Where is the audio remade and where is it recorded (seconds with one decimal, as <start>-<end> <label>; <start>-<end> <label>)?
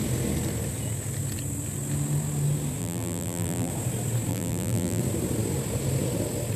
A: 0.0-2.8 recorded; 2.8-3.7 remade; 3.7-4.3 recorded; 4.3-5.0 remade; 5.0-6.6 recorded